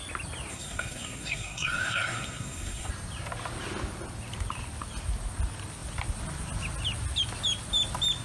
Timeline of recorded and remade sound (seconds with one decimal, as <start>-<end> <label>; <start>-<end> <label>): 0.0-0.5 recorded; 0.5-2.9 remade; 2.9-8.2 recorded